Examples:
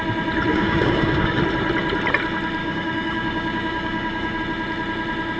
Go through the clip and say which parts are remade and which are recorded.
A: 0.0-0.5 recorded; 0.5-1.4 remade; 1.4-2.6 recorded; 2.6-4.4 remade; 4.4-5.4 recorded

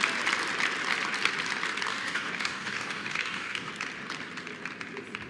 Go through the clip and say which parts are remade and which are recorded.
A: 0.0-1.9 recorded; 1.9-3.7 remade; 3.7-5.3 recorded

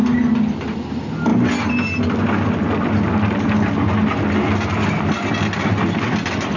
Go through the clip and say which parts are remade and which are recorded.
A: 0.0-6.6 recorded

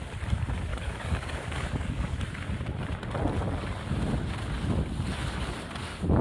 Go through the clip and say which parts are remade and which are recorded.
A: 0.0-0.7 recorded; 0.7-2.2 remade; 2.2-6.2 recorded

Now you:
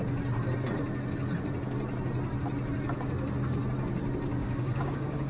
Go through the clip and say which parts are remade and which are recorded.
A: 0.0-4.4 recorded; 4.4-5.3 remade

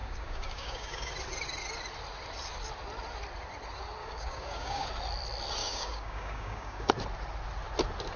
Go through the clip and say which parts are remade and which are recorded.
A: 0.0-1.1 remade; 1.1-4.0 recorded; 4.0-4.9 remade; 4.9-5.6 recorded; 5.6-6.9 remade; 6.9-8.2 recorded

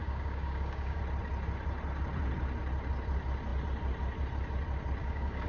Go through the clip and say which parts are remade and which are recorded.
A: 0.0-1.0 remade; 1.0-5.0 recorded; 5.0-5.5 remade

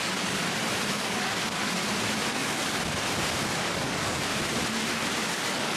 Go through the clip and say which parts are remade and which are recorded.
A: 0.0-0.4 remade; 0.4-0.9 recorded; 0.9-1.8 remade; 1.8-2.3 recorded; 2.3-2.8 remade; 2.8-3.7 recorded; 3.7-4.3 remade; 4.3-5.3 recorded; 5.3-5.8 remade